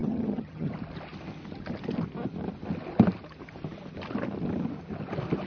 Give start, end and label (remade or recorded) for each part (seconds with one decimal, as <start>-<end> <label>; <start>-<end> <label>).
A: 0.0-0.7 remade; 0.7-5.5 recorded